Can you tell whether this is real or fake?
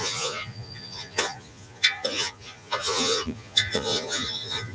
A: fake